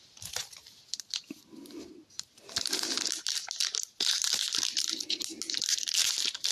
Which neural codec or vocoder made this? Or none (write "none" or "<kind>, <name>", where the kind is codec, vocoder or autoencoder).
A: none